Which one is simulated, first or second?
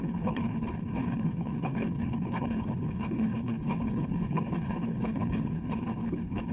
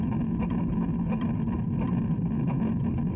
first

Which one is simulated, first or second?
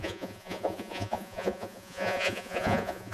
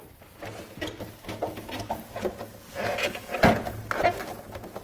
first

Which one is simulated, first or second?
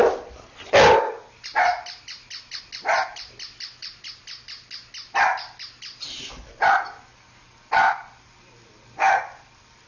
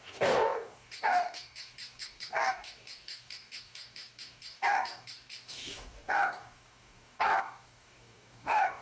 second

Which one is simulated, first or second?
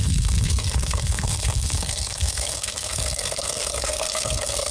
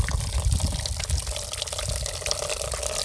first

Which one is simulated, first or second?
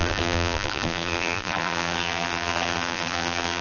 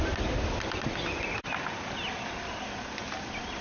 first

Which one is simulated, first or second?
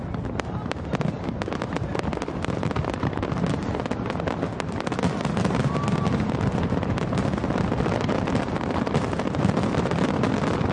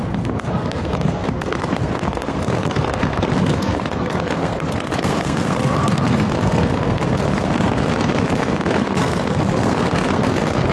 second